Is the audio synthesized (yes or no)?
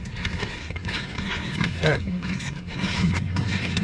yes